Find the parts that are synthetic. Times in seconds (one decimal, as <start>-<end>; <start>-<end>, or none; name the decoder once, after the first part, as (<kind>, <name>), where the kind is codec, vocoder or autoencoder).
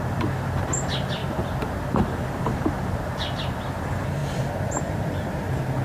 0.0-1.2 (vocoder, BigVGAN v2); 1.7-4.2; 4.8-5.8